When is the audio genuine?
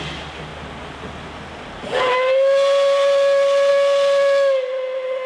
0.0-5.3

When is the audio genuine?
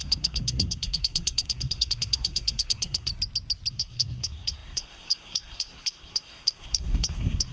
3.1-3.7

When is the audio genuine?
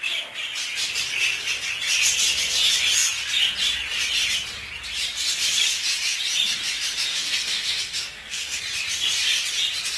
0.0-7.1; 8.6-10.0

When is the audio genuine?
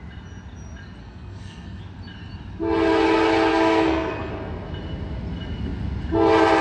0.0-1.0; 1.8-3.5; 4.3-6.6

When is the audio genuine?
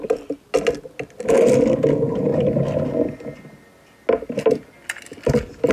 0.0-5.7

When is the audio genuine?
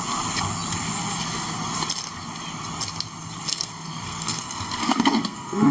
0.0-3.5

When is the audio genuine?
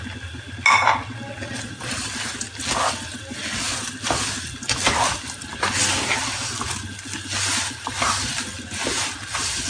0.0-9.7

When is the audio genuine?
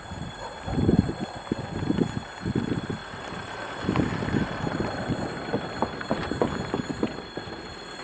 0.0-8.0